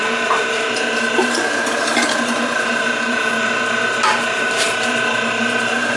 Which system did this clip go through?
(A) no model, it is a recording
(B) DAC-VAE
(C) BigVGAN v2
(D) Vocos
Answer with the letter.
C